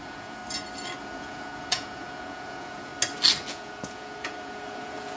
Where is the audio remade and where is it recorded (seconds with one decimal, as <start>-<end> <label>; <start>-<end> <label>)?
0.0-0.4 remade; 0.4-1.0 recorded; 1.0-2.9 remade; 2.9-3.5 recorded; 3.5-5.2 remade